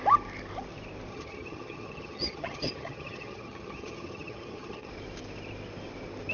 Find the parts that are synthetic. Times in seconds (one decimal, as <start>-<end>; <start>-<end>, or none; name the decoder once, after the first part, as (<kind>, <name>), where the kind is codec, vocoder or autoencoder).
1.1-4.9 (vocoder, HiFi-GAN)